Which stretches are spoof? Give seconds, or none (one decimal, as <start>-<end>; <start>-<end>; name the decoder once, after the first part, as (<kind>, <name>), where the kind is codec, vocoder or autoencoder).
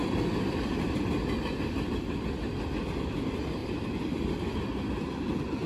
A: 3.6-4.6 (vocoder, BigVGAN v2)